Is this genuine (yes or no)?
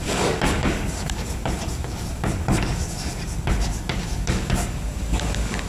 no